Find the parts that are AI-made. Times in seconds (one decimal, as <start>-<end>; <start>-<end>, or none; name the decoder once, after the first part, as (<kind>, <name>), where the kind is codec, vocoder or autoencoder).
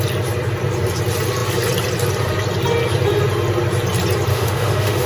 4.3-5.1 (autoencoder, DAC-VAE)